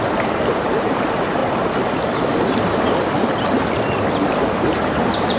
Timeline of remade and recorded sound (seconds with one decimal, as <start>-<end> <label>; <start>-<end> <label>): 0.0-1.4 remade; 1.4-4.6 recorded; 4.6-5.4 remade